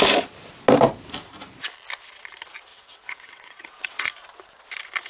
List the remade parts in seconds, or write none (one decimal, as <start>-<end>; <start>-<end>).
2.7-4.1